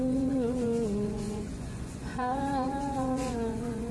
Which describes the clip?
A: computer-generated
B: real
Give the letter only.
A